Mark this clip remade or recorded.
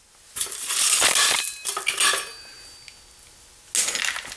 recorded